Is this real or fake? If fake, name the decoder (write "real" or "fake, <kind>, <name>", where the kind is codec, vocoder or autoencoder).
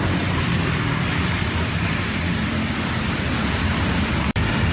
fake, vocoder, BigVGAN v2